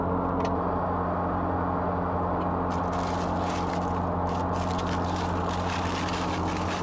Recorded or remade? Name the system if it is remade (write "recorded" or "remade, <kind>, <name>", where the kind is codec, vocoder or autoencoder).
recorded